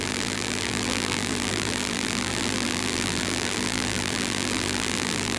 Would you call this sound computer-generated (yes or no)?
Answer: yes